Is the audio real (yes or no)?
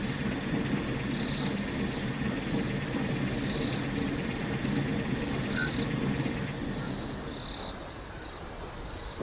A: yes